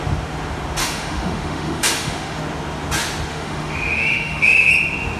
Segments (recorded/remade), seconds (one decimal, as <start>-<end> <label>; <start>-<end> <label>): 0.0-0.8 recorded; 0.8-2.4 remade; 2.4-3.3 recorded; 3.3-4.7 remade; 4.7-5.2 recorded